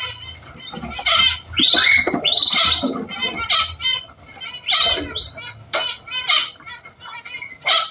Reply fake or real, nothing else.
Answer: real